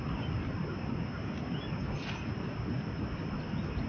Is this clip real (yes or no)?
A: yes